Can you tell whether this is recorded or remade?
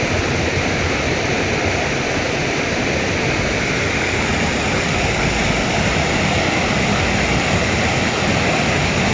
recorded